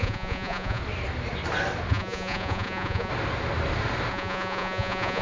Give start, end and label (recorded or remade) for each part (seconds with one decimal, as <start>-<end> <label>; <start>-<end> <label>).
0.0-0.8 remade; 0.8-1.9 recorded; 1.9-3.1 remade; 3.1-4.1 recorded; 4.1-5.2 remade